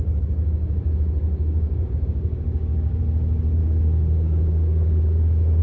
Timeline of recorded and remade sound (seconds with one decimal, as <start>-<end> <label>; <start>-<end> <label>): 0.0-1.2 recorded; 1.2-3.0 remade; 3.0-3.6 recorded; 3.6-5.6 remade